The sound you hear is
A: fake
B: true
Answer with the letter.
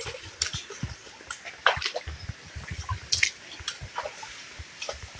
B